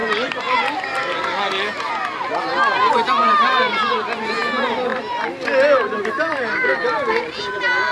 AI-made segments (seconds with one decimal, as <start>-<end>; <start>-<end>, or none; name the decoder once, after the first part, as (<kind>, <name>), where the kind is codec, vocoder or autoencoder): 4.9-7.4 (vocoder, BigVGAN v2)